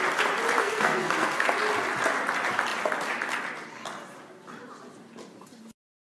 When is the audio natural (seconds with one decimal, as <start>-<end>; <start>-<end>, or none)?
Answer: 0.0-0.6; 1.5-6.1